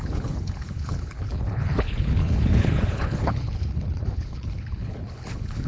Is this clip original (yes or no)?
no